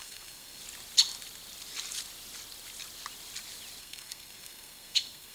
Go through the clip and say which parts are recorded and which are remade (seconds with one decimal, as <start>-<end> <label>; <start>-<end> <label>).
0.0-0.6 remade; 0.6-3.8 recorded; 3.8-5.3 remade